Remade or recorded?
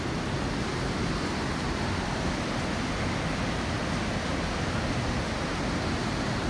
recorded